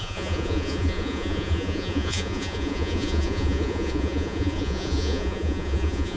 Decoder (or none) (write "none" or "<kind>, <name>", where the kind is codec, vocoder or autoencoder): vocoder, Vocos